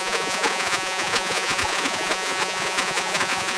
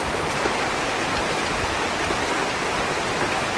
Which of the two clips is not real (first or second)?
first